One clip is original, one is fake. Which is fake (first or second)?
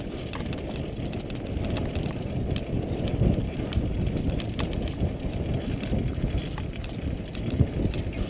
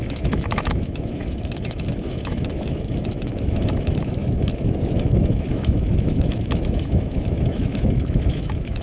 second